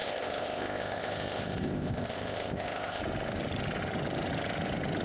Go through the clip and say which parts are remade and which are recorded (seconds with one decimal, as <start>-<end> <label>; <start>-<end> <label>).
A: 0.0-3.0 remade; 3.0-5.0 recorded